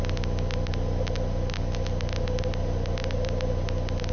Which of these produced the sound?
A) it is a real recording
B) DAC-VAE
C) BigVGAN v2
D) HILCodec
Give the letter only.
A